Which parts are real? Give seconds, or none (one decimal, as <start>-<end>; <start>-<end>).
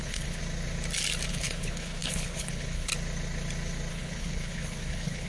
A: 0.4-1.3; 2.9-3.9